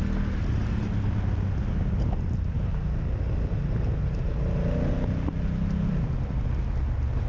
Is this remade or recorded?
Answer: recorded